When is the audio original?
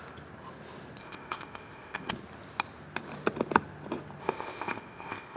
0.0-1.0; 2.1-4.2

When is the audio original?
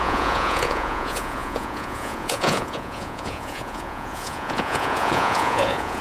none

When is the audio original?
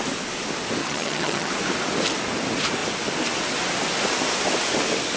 0.0-0.8; 1.5-5.2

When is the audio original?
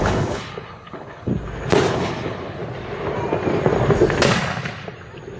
1.3-1.9; 2.6-5.4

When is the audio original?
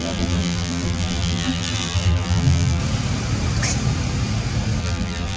2.8-4.8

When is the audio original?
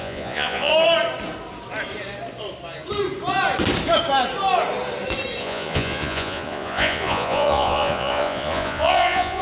0.7-5.4